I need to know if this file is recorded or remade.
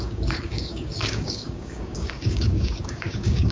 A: remade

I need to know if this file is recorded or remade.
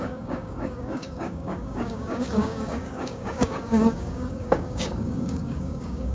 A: remade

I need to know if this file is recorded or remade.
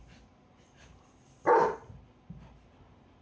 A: recorded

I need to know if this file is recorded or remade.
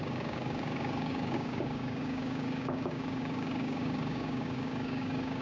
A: remade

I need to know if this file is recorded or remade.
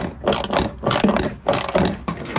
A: recorded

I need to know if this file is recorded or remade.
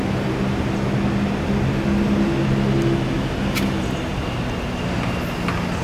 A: recorded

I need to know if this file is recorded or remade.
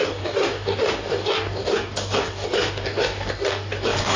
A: remade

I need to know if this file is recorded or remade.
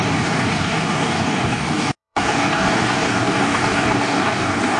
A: remade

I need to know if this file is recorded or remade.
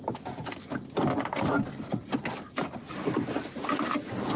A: recorded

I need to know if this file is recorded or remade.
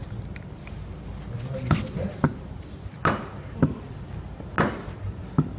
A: recorded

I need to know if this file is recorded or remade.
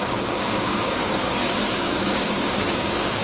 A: remade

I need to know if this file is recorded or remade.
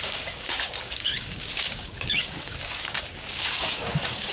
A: remade